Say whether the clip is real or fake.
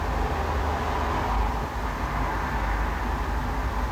real